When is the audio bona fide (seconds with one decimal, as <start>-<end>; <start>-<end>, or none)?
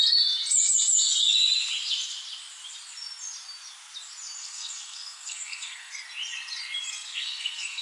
0.0-4.4; 6.0-6.9